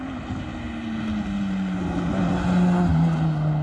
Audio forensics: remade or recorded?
recorded